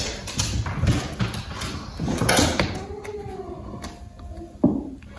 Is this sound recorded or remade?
recorded